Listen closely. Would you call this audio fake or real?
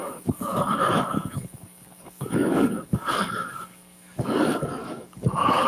fake